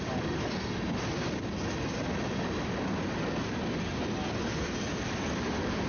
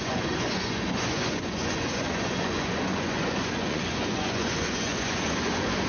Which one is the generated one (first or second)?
second